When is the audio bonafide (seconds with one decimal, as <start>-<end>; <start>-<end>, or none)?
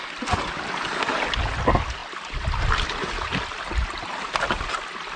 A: 0.0-5.2